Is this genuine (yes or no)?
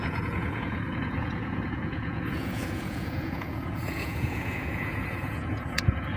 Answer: no